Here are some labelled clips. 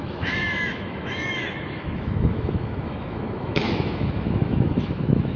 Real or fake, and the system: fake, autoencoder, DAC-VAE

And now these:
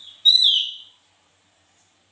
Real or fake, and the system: fake, vocoder, BigVGAN v2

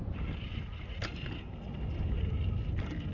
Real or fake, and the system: real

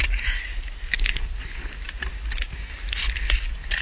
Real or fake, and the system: real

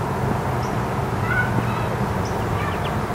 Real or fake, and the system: real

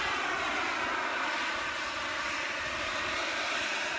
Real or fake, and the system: real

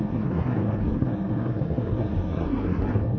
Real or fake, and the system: fake, codec, SNAC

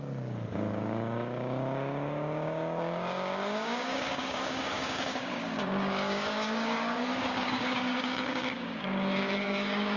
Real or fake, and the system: fake, codec, DAC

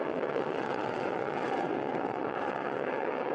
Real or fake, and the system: fake, vocoder, WaveNeXt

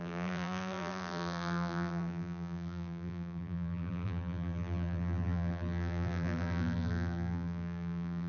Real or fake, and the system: fake, vocoder, BigVGAN v2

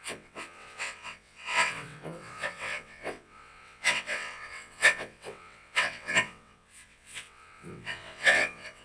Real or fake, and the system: fake, vocoder, WaveNeXt